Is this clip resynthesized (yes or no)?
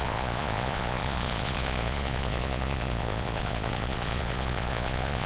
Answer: yes